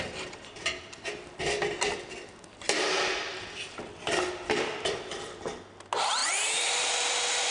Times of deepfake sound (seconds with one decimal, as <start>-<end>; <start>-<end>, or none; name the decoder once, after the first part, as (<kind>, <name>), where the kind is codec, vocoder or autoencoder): 6.2-6.9 (vocoder, BigVGAN v2)